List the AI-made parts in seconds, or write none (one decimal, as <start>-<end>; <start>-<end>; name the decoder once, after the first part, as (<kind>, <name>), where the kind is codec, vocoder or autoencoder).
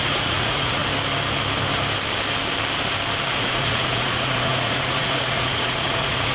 0.0-0.8 (vocoder, Vocos); 3.3-6.3